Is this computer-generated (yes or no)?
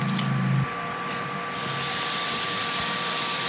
no